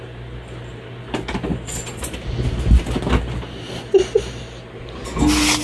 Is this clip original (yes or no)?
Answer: yes